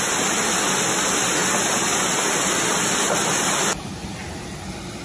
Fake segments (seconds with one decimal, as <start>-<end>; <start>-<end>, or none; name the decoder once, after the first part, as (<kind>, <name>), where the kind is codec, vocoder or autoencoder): none